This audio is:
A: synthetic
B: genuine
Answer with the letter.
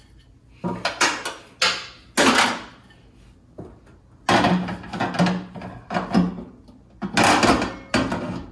B